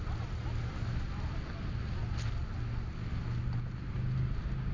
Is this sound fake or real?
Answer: real